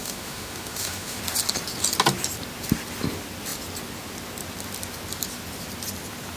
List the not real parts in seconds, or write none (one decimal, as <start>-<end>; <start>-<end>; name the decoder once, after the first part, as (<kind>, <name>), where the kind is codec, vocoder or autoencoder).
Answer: 0.0-1.2 (autoencoder, DAC-VAE)